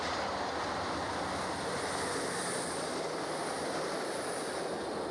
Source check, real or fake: real